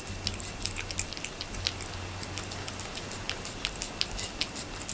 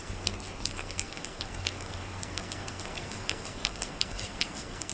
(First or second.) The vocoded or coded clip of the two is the second